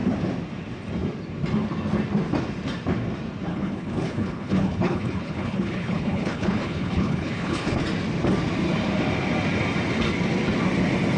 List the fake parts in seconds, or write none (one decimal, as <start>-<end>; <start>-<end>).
3.5-7.8